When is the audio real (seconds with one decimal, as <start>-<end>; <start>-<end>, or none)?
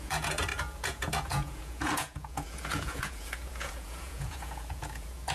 none